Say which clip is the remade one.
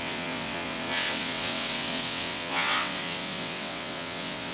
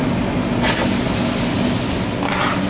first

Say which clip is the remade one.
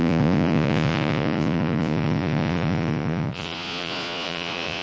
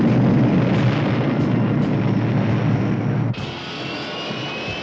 first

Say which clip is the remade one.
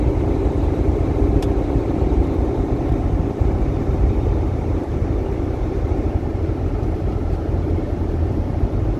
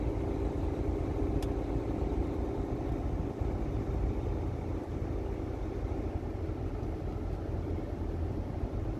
first